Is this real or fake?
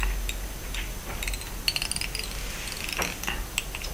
real